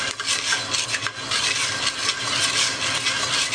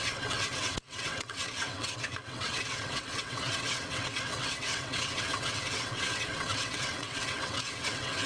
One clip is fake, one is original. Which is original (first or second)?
first